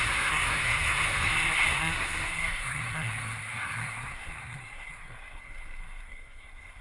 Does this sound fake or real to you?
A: fake